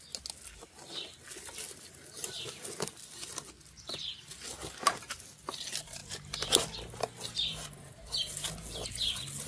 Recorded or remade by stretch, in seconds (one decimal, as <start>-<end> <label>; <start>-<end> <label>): 0.0-9.5 recorded